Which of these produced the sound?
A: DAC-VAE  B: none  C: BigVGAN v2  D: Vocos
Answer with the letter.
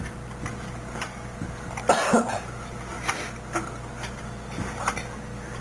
B